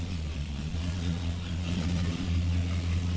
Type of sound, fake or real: fake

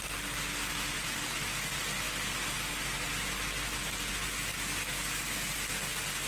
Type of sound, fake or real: real